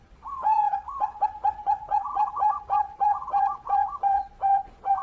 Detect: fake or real fake